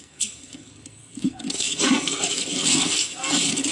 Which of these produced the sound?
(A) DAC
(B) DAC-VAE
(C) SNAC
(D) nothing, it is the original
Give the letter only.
C